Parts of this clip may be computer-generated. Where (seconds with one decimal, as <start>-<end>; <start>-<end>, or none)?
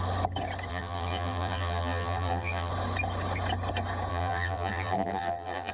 0.7-2.7; 4.1-5.7